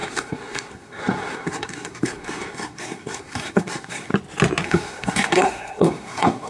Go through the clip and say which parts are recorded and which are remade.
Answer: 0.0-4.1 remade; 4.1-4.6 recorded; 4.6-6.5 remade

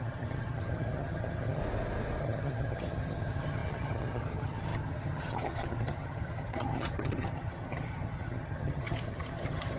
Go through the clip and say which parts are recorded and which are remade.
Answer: 0.0-1.6 remade; 1.6-2.2 recorded; 2.2-9.8 remade

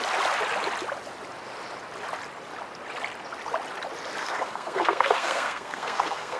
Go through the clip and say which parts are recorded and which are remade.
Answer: 0.0-4.2 recorded; 4.2-6.4 remade

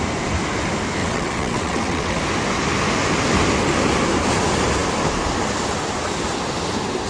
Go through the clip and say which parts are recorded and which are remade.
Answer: 0.0-1.0 recorded; 1.0-2.2 remade; 2.2-7.1 recorded

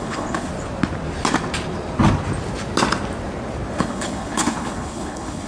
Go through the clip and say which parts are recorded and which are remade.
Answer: 0.0-0.5 remade; 0.5-3.8 recorded; 3.8-5.5 remade

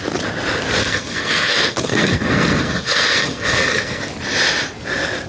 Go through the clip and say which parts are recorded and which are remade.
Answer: 0.0-0.8 recorded; 0.8-4.0 remade; 4.0-5.3 recorded